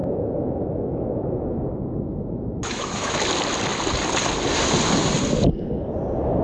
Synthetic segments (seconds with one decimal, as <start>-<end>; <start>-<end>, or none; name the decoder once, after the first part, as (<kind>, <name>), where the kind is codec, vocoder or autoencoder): 0.0-3.2 (autoencoder, DAC-VAE)